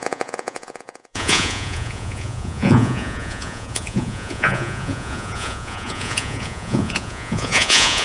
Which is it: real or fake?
fake